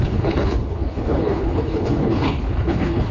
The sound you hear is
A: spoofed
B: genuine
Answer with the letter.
A